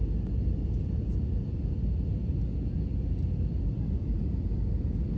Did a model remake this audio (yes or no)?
no